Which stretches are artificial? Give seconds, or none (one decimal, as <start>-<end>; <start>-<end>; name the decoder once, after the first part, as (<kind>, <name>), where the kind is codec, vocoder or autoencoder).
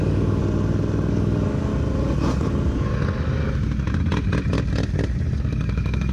0.0-0.4 (codec, DAC); 1.1-1.7; 5.4-6.1